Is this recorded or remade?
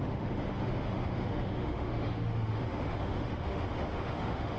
remade